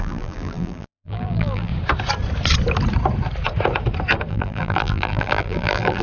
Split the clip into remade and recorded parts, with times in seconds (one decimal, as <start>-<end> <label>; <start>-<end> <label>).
0.0-1.7 remade; 1.7-4.3 recorded; 4.3-6.0 remade